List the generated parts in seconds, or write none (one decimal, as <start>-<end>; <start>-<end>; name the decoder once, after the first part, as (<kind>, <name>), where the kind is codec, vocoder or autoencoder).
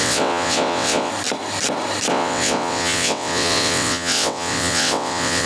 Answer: 0.0-1.1 (vocoder, WaveNeXt); 2.1-5.5